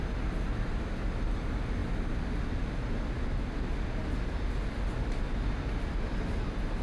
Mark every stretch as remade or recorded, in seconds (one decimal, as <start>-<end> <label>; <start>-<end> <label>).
0.0-6.8 recorded